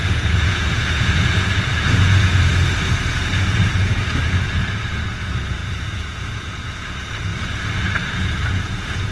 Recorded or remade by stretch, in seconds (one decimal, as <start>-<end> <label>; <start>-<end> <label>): 0.0-2.5 remade; 2.5-3.2 recorded; 3.2-7.3 remade; 7.3-8.1 recorded; 8.1-9.1 remade